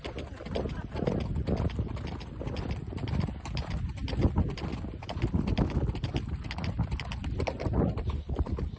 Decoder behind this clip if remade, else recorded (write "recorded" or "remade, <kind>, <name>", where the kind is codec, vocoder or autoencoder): recorded